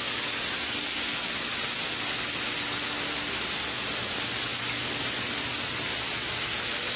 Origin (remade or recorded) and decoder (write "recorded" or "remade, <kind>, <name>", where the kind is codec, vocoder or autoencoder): recorded